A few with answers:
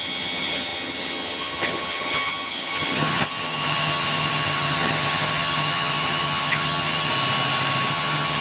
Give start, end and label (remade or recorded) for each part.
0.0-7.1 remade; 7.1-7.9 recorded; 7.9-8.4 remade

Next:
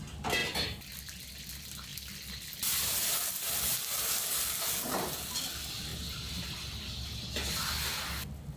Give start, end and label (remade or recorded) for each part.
0.0-8.6 recorded

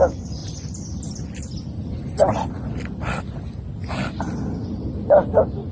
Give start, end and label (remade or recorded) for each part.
0.0-0.4 recorded; 0.4-2.5 remade; 2.5-5.7 recorded

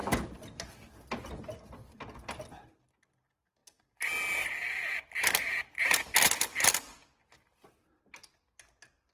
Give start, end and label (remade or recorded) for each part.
0.0-9.1 recorded

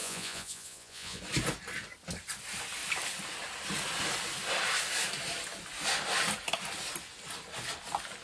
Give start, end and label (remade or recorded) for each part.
0.0-1.2 remade; 1.2-8.2 recorded

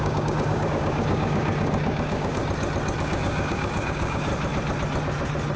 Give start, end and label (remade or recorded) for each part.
0.0-2.4 remade; 2.4-3.0 recorded; 3.0-4.3 remade; 4.3-5.6 recorded